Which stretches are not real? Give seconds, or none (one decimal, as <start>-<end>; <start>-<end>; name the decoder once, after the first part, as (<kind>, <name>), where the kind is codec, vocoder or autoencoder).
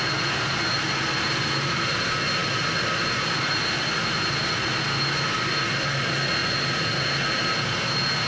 none